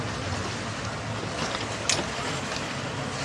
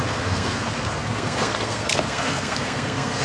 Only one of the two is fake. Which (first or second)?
second